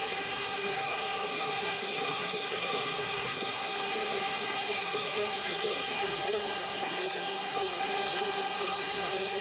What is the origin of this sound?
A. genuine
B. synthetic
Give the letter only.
B